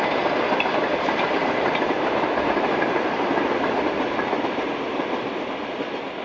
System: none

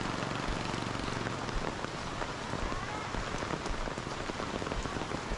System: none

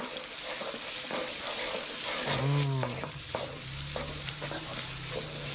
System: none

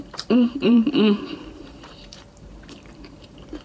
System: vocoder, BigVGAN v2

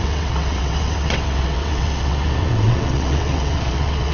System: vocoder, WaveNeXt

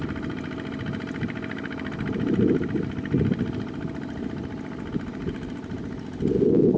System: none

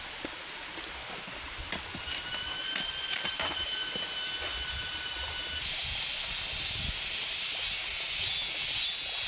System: none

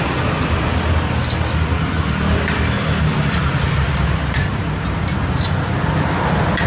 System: none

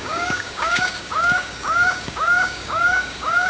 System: codec, DAC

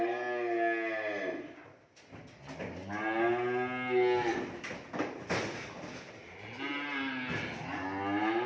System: none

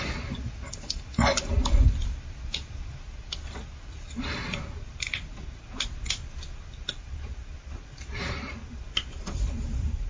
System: none